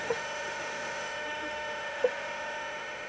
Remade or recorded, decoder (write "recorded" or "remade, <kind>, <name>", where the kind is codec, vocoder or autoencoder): remade, autoencoder, DAC-VAE